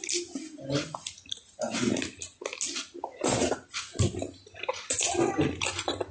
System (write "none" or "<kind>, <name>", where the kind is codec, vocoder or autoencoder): none